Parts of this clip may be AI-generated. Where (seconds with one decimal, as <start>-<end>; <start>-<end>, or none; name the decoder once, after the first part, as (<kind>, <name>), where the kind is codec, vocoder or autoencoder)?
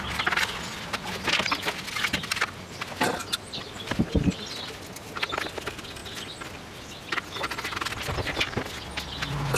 none